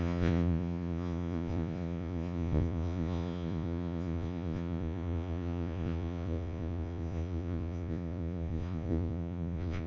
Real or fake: fake